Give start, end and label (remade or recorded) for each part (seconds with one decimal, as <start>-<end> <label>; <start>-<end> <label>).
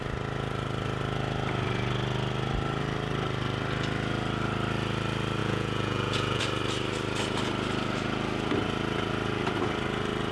0.0-5.4 recorded; 5.4-6.4 remade; 6.4-10.3 recorded